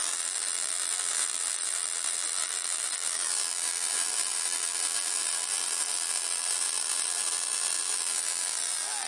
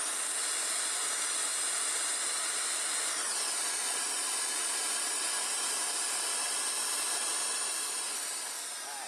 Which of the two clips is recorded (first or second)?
second